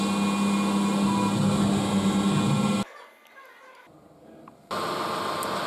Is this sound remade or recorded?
recorded